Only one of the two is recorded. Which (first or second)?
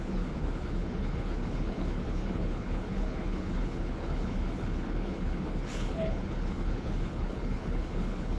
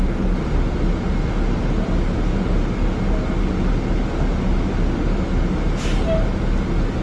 second